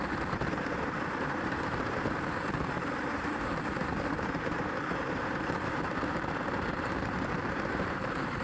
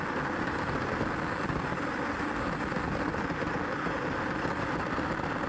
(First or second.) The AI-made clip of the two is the first